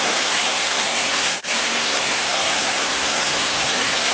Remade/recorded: remade